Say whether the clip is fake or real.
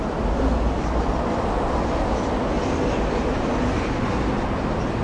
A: real